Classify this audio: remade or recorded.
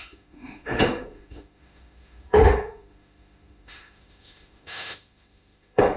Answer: remade